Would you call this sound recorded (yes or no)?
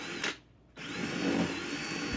yes